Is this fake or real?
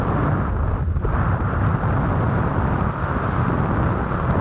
real